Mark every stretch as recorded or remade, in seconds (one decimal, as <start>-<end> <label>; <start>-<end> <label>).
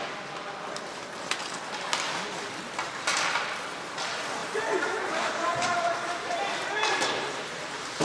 0.0-4.4 recorded; 4.4-8.0 remade